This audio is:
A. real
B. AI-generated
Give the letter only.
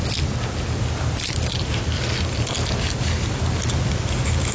A